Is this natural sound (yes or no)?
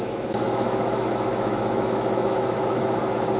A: no